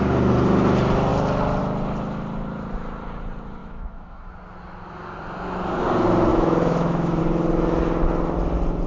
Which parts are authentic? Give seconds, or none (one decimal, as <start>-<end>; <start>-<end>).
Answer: 0.0-3.6; 4.3-6.3; 7.2-8.9